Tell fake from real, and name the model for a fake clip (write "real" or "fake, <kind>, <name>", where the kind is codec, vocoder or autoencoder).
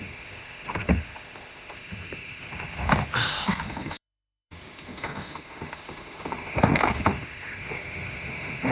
fake, autoencoder, DAC-VAE